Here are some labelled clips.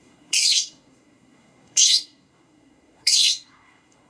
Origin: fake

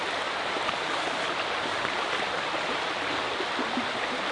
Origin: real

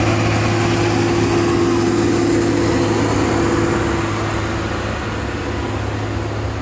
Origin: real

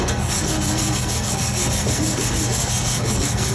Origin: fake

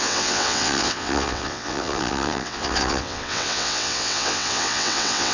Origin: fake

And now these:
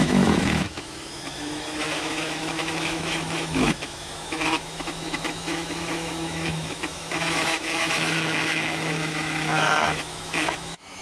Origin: fake